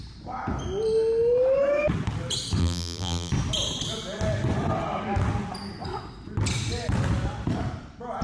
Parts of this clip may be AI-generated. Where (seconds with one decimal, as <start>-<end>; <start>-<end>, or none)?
2.6-3.3